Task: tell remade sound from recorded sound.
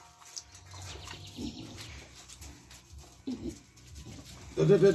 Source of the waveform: recorded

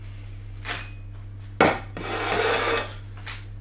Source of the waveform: recorded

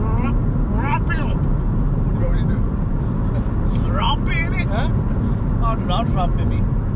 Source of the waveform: recorded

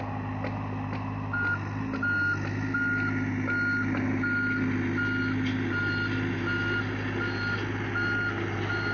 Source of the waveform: recorded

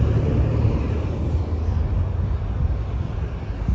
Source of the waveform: recorded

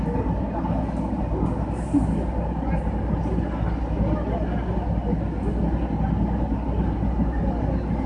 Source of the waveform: recorded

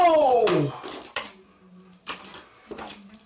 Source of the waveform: recorded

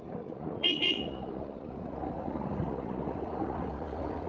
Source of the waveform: remade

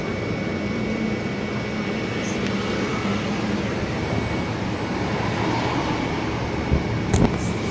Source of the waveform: recorded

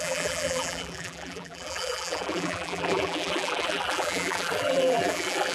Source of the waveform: remade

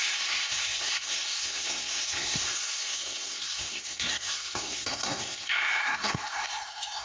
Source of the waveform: remade